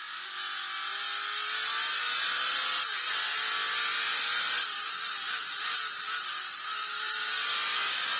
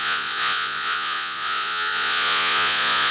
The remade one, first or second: second